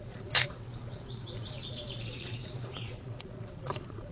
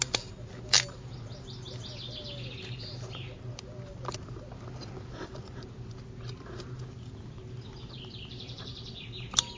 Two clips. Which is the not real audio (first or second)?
first